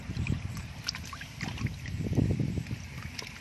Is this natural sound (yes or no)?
yes